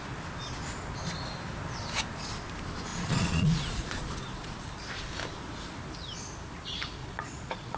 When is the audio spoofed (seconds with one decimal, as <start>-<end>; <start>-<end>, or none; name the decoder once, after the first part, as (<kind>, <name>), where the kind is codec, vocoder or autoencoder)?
2.9-4.6 (vocoder, Vocos); 7.0-7.8